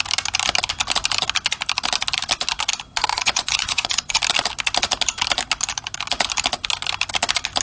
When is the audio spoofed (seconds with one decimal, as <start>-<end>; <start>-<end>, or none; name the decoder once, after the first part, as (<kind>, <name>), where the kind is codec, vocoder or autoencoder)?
3.1-4.2 (vocoder, Vocos)